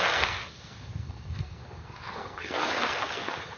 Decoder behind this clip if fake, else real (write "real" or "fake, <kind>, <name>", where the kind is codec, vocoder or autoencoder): fake, codec, SNAC